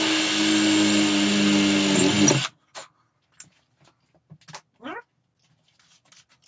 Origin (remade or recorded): recorded